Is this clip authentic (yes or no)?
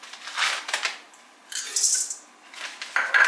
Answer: yes